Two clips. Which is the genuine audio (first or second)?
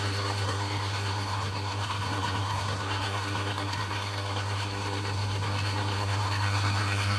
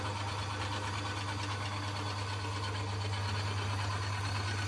second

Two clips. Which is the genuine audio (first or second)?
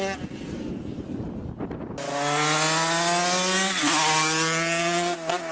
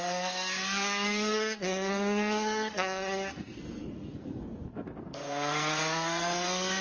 first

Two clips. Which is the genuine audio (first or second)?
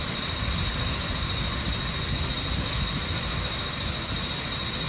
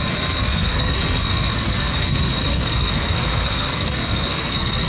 first